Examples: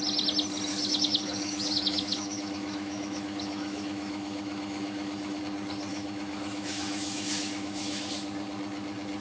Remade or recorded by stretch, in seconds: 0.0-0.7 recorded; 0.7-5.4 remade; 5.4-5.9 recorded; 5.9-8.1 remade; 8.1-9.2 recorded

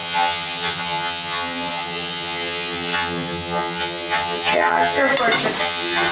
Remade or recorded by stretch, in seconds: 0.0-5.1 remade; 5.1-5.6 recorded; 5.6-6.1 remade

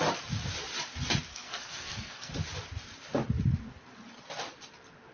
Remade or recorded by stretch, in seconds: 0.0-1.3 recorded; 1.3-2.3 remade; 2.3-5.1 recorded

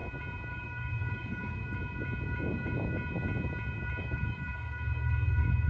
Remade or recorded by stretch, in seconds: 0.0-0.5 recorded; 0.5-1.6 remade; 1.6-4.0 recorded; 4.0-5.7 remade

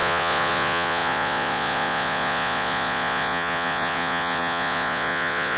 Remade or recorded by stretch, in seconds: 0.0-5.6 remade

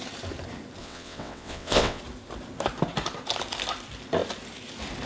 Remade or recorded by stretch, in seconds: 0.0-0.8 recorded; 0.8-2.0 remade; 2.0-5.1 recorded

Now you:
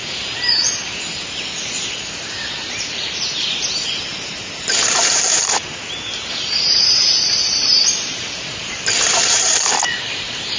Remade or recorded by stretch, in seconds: 0.0-10.6 remade

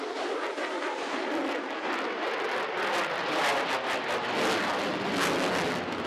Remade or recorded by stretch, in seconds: 0.0-6.1 recorded